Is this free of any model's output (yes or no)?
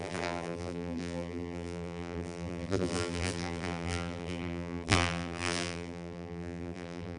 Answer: no